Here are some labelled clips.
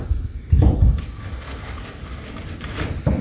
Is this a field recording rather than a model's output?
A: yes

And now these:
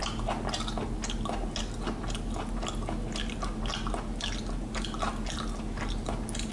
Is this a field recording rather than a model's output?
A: yes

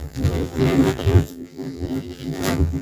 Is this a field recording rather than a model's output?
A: no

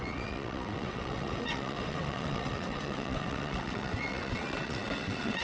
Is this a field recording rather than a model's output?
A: no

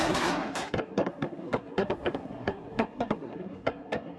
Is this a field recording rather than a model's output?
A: no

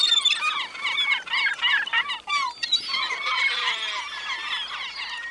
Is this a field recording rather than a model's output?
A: yes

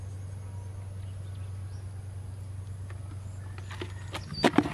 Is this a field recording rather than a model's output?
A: yes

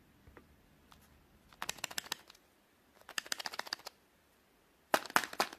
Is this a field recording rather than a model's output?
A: yes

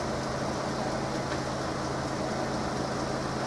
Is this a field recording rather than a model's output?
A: yes